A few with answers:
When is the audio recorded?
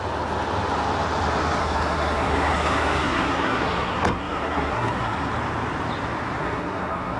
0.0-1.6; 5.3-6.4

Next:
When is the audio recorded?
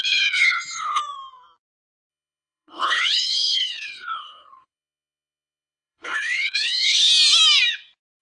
1.0-2.1; 7.1-8.2